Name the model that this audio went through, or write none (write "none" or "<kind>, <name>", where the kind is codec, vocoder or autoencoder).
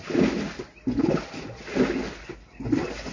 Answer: none